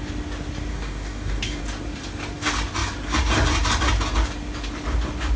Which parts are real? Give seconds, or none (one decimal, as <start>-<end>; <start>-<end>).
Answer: 0.0-0.7; 1.6-5.4